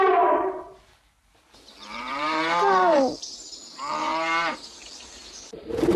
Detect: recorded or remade remade